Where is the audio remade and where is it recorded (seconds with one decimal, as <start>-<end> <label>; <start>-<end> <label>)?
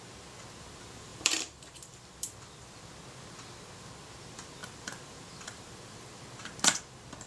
0.0-1.1 recorded; 1.1-2.9 remade; 2.9-4.6 recorded; 4.6-6.2 remade; 6.2-7.3 recorded